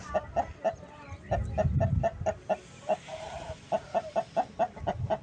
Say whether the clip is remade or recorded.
recorded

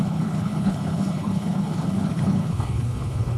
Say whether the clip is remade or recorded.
remade